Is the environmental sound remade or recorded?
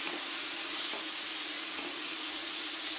remade